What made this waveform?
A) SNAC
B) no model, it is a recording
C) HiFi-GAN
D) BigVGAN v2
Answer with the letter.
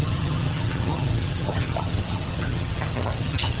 C